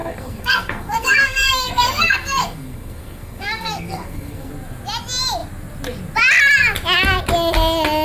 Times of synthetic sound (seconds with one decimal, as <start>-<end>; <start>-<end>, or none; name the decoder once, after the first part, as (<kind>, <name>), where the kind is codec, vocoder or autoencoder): 0.0-4.5 (codec, SNAC)